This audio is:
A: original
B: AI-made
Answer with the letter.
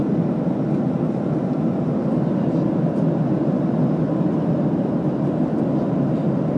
A